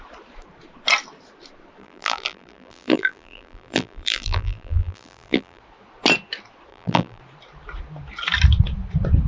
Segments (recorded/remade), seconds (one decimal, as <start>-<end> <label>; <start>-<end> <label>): 0.0-1.8 recorded; 1.8-5.6 remade; 5.6-6.7 recorded; 6.7-7.2 remade; 7.2-9.3 recorded